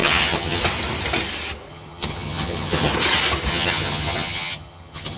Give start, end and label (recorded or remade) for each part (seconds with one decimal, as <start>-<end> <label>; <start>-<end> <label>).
0.0-0.6 remade; 0.6-1.7 recorded; 1.7-2.9 remade; 2.9-3.5 recorded; 3.5-5.2 remade